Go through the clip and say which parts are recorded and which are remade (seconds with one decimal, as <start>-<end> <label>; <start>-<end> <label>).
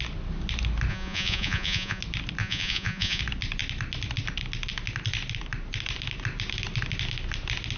0.0-0.9 recorded; 0.9-2.0 remade; 2.0-2.4 recorded; 2.4-3.2 remade; 3.2-7.8 recorded